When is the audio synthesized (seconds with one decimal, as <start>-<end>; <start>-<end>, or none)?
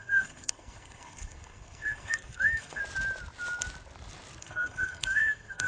0.0-2.8; 4.4-5.7